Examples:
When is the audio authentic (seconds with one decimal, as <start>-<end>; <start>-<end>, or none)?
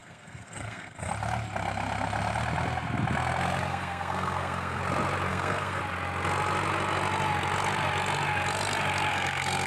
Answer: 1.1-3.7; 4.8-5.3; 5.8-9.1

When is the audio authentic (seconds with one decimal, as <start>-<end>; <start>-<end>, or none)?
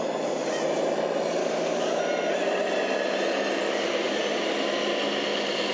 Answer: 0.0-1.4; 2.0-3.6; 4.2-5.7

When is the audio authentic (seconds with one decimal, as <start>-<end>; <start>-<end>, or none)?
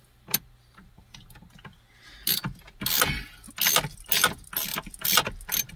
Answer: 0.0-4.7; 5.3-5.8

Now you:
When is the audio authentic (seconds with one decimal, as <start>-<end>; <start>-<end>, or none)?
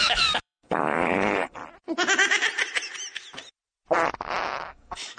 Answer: 1.6-4.7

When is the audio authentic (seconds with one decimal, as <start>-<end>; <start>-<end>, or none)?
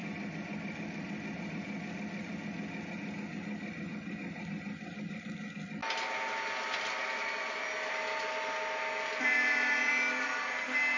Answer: 0.0-11.0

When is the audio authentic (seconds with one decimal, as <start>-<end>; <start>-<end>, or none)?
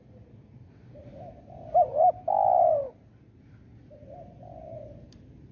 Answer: 0.0-5.5